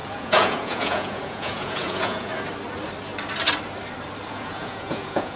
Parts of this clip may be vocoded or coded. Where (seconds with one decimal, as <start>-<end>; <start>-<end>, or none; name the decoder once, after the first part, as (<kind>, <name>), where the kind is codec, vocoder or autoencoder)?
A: 0.0-2.3 (vocoder, Vocos); 4.3-5.4